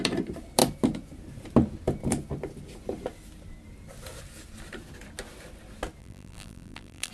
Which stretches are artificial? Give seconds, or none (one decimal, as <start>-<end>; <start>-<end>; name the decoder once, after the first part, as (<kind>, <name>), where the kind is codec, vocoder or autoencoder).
6.0-7.1 (vocoder, BigVGAN v2)

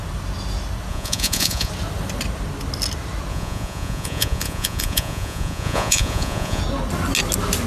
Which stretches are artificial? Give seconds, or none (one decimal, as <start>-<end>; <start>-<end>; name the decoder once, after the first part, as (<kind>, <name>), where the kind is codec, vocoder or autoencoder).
0.9-1.7 (vocoder, Vocos); 3.3-6.6